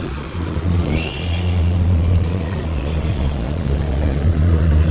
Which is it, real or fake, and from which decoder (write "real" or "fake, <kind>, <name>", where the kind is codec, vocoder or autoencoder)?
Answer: fake, vocoder, Vocos